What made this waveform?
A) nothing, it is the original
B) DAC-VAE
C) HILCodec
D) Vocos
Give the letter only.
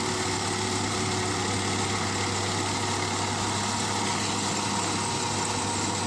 A